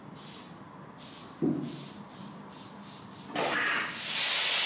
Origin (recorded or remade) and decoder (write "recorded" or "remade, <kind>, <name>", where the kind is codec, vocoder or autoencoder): recorded